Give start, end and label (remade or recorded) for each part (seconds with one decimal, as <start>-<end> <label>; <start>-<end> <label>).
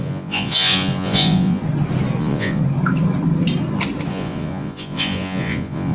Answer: 0.0-1.6 remade; 1.6-2.2 recorded; 2.2-2.6 remade; 2.6-4.1 recorded; 4.1-5.9 remade